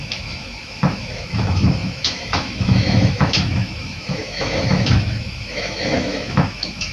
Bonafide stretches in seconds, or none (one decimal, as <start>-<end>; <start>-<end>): none